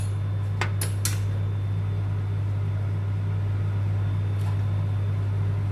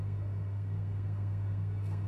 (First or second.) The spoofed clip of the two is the second